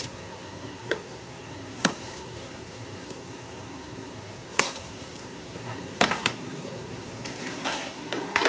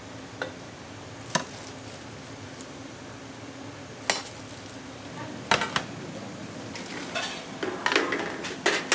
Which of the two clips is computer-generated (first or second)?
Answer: first